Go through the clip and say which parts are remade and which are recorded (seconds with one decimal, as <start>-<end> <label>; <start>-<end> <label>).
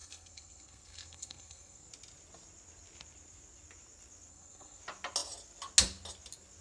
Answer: 0.0-1.9 remade; 1.9-4.3 recorded; 4.3-4.8 remade; 4.8-6.6 recorded